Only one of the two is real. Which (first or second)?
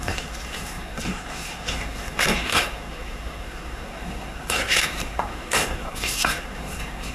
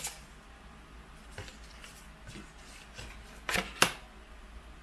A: second